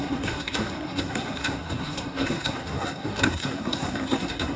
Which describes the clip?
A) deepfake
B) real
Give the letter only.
A